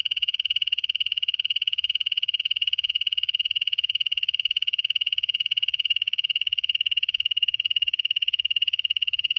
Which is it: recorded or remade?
remade